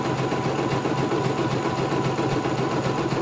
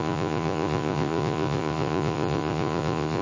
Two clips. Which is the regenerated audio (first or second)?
second